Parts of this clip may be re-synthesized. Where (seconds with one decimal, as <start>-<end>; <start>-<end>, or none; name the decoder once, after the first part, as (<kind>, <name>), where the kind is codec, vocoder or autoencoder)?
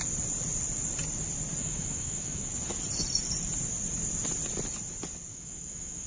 1.6-2.5 (autoencoder, DAC-VAE); 5.3-6.1